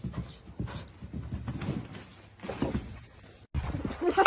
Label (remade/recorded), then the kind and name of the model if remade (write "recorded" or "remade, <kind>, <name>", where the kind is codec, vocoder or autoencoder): recorded